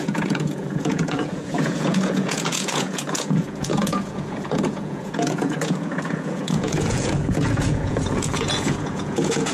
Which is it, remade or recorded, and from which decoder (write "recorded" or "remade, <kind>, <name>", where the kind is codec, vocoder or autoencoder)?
remade, vocoder, Vocos